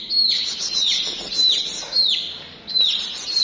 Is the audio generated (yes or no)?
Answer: no